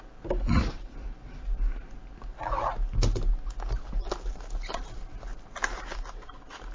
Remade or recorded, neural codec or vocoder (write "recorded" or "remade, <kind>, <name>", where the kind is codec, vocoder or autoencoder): recorded